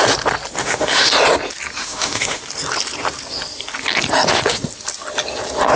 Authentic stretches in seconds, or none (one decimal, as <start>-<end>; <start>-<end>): 0.0-0.6; 1.1-1.8; 2.4-5.8